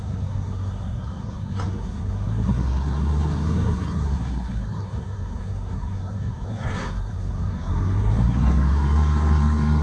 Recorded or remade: remade